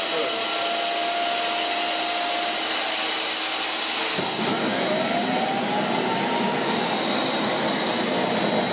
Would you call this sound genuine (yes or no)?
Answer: yes